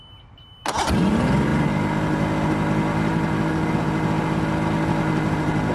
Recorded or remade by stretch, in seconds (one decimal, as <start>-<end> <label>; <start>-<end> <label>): 0.0-5.7 recorded